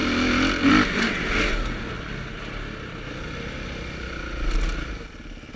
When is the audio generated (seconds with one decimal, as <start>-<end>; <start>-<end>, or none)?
none